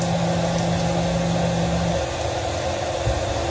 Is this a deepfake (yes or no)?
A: no